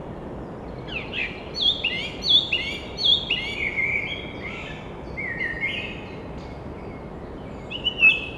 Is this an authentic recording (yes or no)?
yes